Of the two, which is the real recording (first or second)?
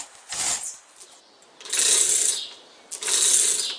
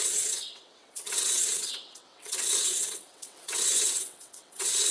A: first